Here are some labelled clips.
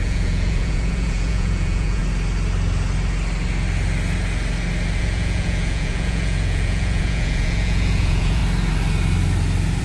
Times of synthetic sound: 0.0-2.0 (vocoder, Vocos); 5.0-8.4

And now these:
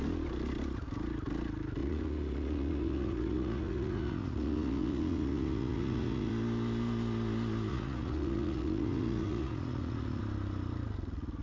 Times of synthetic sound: 1.8-6.3 (vocoder, Vocos); 7.7-10.2